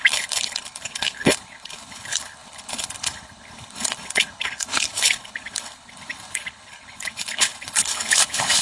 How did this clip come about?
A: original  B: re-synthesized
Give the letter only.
B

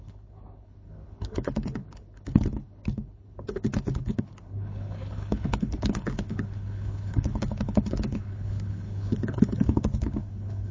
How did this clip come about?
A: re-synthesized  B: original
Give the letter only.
A